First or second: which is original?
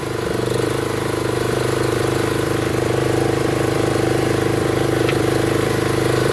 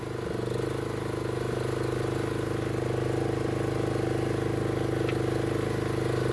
second